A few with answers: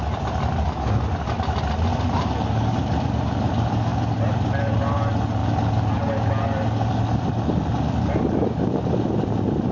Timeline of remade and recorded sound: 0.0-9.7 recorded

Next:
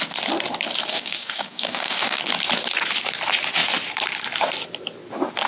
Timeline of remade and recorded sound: 0.0-0.9 recorded; 0.9-2.2 remade; 2.2-5.5 recorded

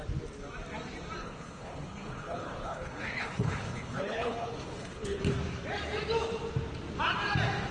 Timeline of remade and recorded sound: 0.0-1.2 recorded; 1.2-5.2 remade; 5.2-7.7 recorded